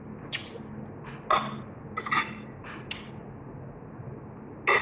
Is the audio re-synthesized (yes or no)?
no